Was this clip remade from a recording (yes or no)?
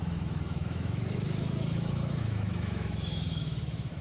yes